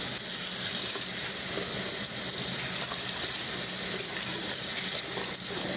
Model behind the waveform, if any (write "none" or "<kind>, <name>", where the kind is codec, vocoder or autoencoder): none